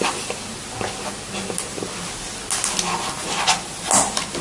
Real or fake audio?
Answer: real